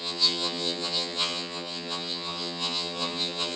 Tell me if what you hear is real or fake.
fake